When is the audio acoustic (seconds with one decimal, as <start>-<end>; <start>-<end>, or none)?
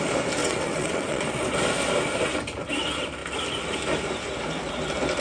0.0-0.4; 1.2-5.2